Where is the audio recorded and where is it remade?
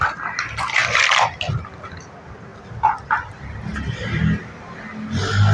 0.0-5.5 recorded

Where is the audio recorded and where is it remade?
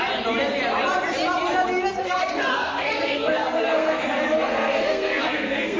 0.0-2.0 recorded; 2.0-5.8 remade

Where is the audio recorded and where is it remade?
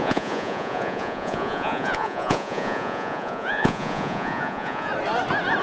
0.0-4.9 remade; 4.9-5.6 recorded